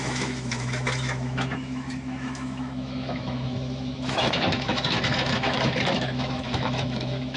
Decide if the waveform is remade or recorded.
remade